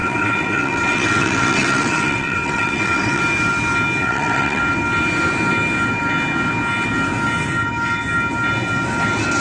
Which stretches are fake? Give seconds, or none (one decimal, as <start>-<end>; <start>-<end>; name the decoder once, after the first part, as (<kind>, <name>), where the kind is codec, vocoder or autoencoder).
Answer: 0.0-3.2 (vocoder, WaveNeXt); 4.0-4.6